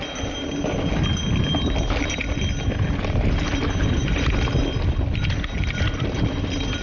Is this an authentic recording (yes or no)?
yes